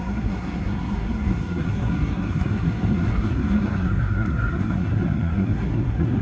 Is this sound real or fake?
fake